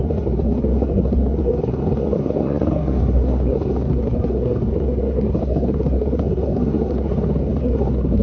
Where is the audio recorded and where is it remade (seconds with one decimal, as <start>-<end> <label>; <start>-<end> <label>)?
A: 0.0-8.2 remade